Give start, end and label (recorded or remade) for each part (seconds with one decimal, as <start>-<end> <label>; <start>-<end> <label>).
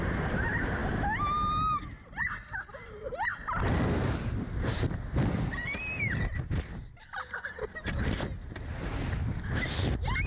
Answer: 0.0-10.3 recorded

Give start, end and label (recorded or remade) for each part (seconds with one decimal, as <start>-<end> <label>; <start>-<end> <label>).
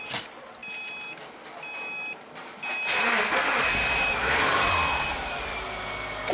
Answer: 0.0-6.3 recorded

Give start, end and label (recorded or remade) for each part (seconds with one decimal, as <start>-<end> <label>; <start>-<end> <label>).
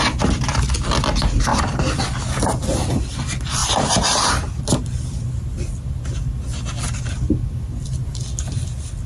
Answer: 0.0-1.5 recorded; 1.5-2.2 remade; 2.2-3.6 recorded; 3.6-4.6 remade; 4.6-9.1 recorded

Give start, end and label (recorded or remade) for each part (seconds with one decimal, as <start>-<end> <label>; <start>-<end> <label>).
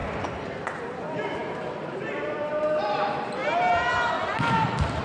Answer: 0.0-3.4 remade; 3.4-5.0 recorded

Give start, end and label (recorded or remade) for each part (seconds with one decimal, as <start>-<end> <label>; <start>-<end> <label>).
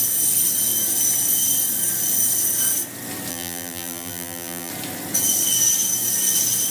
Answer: 0.0-3.3 recorded; 3.3-4.7 remade; 4.7-6.7 recorded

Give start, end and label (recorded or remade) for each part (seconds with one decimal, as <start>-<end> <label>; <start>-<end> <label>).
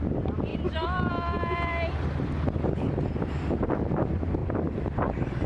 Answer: 0.0-0.5 recorded; 0.5-1.1 remade; 1.1-4.4 recorded; 4.4-5.5 remade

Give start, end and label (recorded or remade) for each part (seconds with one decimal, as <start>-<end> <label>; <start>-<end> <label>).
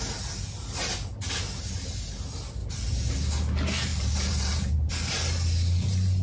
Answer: 0.0-2.6 recorded; 2.6-3.2 remade; 3.2-3.9 recorded; 3.9-4.9 remade; 4.9-6.2 recorded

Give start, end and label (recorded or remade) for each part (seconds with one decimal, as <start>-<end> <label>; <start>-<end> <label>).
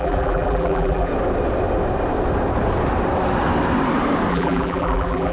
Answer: 0.0-1.1 remade; 1.1-4.3 recorded; 4.3-5.3 remade